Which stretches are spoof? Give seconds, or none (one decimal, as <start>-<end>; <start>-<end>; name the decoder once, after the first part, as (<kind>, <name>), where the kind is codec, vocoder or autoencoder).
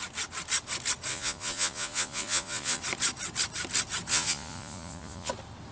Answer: 1.1-2.8 (vocoder, Vocos); 4.1-5.3